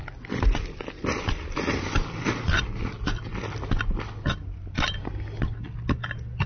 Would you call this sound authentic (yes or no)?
yes